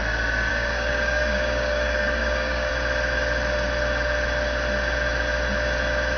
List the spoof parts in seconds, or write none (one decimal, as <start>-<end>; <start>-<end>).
0.5-2.7